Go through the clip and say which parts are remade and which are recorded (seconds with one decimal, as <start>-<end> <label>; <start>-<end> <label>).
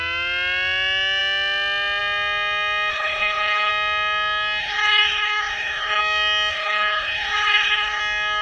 0.0-2.9 recorded; 2.9-3.7 remade; 3.7-4.6 recorded; 4.6-6.0 remade; 6.0-6.5 recorded; 6.5-8.0 remade; 8.0-8.4 recorded